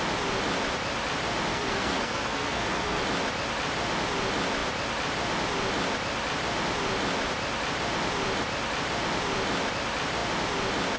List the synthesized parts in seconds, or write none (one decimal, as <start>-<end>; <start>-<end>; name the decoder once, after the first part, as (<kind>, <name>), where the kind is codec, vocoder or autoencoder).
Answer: 1.5-3.0 (codec, SNAC)